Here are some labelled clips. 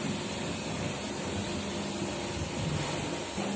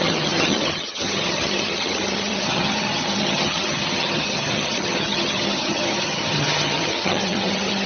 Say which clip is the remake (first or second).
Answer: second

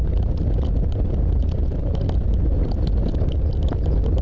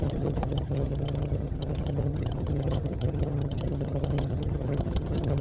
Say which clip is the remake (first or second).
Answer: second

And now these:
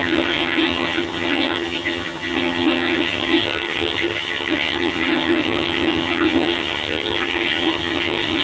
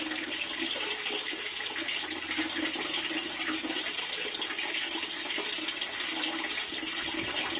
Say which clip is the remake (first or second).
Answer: first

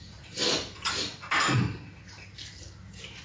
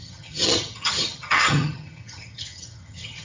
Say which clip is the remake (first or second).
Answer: second